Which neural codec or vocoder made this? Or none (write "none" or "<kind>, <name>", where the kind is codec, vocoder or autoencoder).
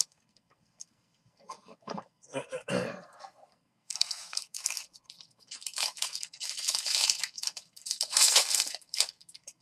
codec, SNAC